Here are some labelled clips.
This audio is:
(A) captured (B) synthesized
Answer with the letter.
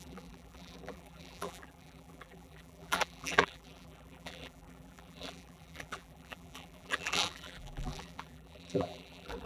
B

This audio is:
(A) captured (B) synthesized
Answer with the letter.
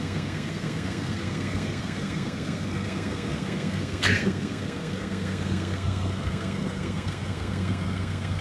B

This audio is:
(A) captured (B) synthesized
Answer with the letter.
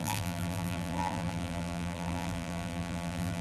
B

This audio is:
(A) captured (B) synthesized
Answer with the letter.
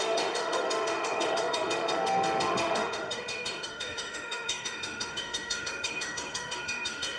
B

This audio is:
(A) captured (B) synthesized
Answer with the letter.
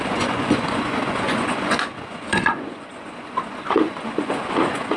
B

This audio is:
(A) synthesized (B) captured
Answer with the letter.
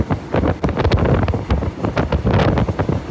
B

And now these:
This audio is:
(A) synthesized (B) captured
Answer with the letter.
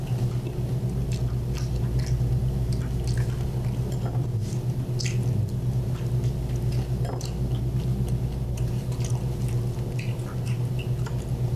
B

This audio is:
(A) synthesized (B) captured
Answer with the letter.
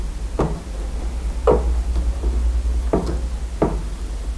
B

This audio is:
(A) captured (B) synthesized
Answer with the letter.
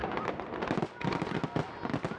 A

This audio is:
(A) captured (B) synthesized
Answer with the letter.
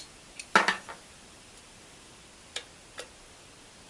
A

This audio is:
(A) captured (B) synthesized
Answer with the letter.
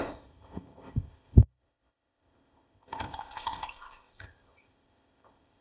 B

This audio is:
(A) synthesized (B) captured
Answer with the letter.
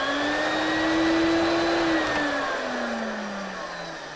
B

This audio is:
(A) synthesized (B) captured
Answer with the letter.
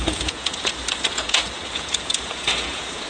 A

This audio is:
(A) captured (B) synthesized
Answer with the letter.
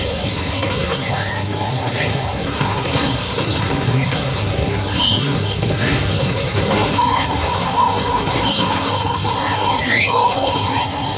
B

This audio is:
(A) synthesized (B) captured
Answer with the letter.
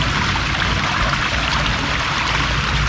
B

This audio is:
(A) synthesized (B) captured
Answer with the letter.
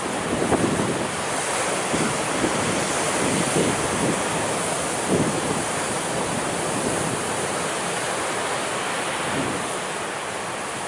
B